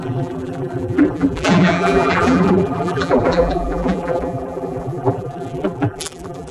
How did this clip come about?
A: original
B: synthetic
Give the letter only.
B